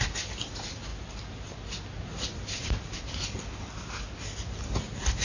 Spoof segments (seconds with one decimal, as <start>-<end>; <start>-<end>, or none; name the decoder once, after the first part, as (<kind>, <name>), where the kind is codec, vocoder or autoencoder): none